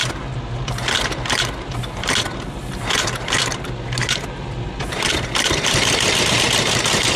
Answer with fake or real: real